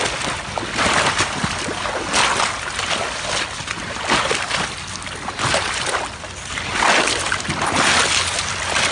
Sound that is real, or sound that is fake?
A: real